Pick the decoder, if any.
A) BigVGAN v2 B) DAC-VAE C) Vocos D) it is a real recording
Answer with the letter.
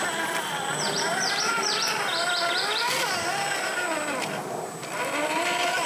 D